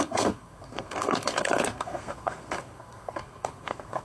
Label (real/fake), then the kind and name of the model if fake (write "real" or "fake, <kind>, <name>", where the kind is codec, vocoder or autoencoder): fake, codec, SNAC